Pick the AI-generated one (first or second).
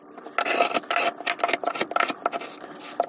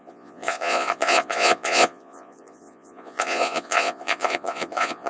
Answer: second